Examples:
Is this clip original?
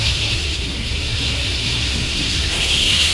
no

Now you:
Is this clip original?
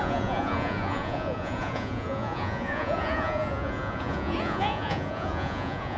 no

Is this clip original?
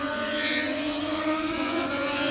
no